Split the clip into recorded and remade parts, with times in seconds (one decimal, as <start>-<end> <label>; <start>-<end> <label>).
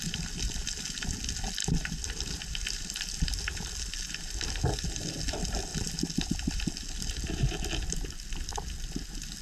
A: 0.0-9.4 recorded